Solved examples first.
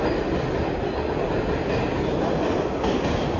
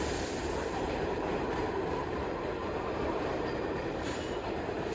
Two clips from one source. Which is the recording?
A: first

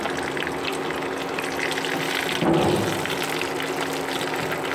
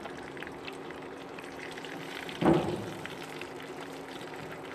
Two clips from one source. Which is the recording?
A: first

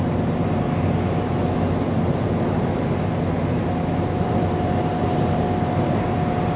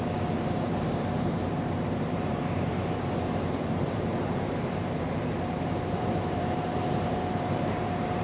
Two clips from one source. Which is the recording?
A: first